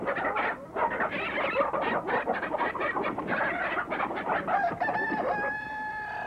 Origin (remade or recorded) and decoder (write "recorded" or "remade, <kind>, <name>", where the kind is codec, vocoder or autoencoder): remade, vocoder, BigVGAN v2